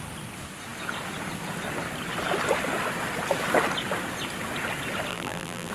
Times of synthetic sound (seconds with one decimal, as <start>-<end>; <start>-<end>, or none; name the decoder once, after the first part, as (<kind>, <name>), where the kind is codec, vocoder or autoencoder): 5.1-5.7 (vocoder, BigVGAN v2)